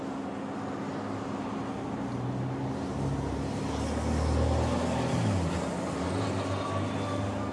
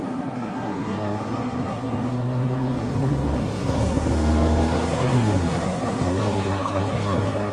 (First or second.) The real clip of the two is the first